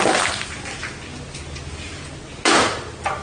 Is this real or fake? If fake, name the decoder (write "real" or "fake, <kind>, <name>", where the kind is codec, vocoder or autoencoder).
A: real